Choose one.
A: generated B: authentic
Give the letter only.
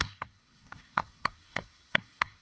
A